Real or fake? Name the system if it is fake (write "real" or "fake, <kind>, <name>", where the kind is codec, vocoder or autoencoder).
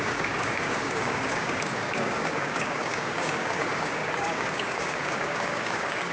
fake, codec, DAC